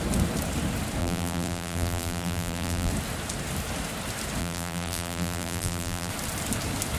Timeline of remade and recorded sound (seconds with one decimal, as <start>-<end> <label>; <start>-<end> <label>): 0.0-1.0 recorded; 1.0-2.9 remade; 2.9-4.4 recorded; 4.4-6.1 remade; 6.1-7.0 recorded